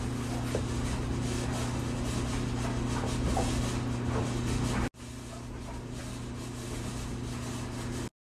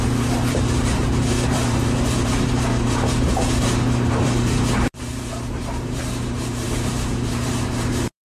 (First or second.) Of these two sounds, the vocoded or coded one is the second